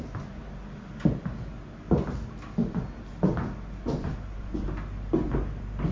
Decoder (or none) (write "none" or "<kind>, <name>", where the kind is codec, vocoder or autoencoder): none